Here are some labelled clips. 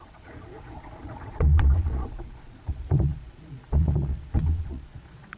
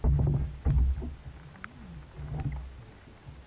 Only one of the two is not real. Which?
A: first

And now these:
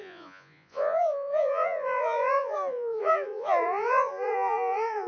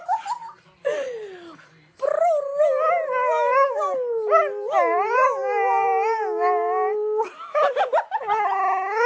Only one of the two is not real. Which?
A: first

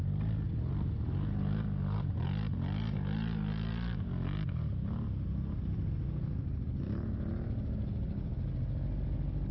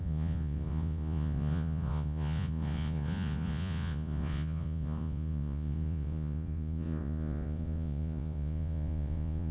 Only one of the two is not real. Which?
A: second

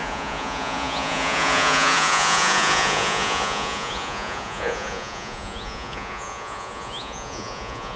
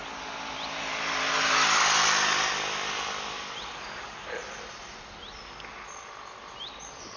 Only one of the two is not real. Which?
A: first